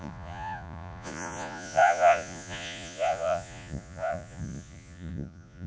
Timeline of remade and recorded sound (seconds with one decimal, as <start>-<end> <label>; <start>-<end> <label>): 0.0-5.7 remade